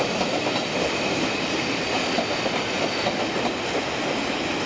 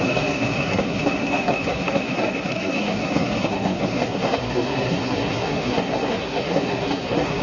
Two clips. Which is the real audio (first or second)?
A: first